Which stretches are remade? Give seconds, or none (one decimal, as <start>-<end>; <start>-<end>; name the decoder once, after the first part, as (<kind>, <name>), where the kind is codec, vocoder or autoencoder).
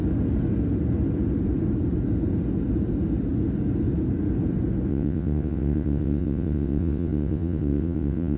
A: 4.9-8.4 (vocoder, WaveNeXt)